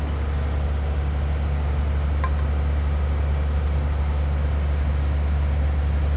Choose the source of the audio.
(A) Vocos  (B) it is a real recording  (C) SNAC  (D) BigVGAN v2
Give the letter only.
B